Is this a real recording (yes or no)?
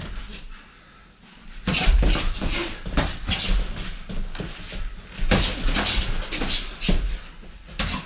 yes